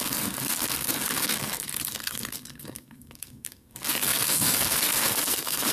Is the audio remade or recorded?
remade